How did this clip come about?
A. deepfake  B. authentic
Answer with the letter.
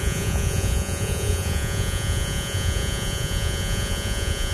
A